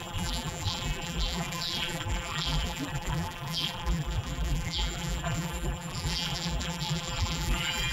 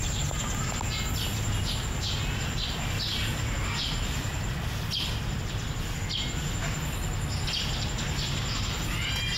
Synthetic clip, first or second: first